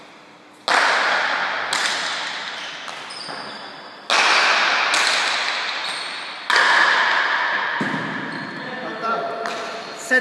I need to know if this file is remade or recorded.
recorded